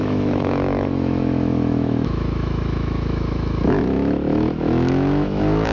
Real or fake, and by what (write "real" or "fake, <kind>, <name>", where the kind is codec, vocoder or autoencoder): fake, autoencoder, DAC-VAE